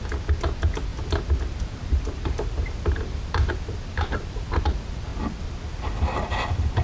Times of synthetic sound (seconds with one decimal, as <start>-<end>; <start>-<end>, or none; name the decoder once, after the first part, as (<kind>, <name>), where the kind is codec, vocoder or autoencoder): 0.0-0.9 (vocoder, BigVGAN v2); 1.4-5.1; 6.3-6.8